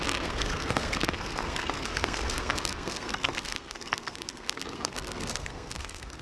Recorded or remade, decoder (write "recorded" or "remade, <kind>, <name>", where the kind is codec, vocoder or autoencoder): remade, codec, SNAC